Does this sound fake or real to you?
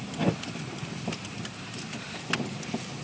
real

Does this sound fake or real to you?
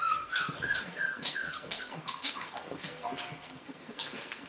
fake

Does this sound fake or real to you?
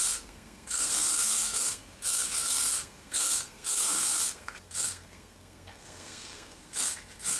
fake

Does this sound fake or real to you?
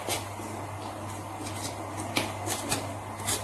real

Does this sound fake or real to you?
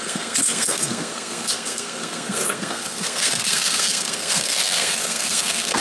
fake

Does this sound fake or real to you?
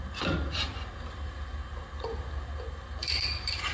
real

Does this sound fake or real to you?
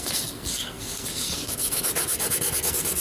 fake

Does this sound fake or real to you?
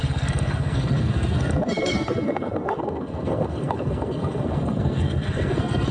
fake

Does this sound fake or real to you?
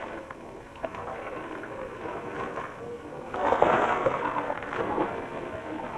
fake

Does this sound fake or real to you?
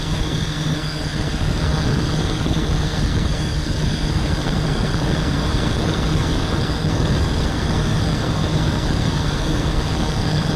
fake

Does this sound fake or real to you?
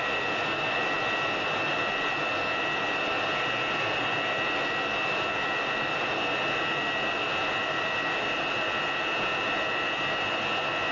real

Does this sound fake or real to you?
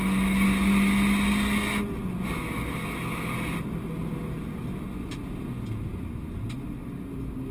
real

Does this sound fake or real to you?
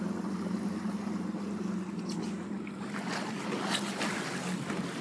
real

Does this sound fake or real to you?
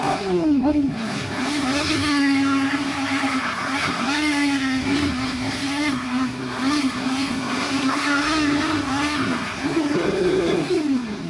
fake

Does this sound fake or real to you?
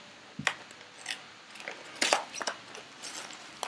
real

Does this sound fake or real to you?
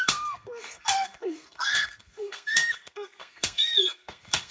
fake